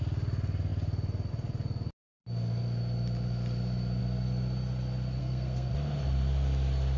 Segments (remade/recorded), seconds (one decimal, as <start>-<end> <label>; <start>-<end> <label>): 0.0-5.2 recorded; 5.2-5.7 remade; 5.7-7.0 recorded